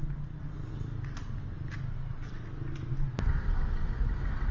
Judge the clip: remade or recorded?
recorded